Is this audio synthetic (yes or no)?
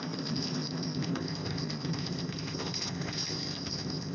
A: yes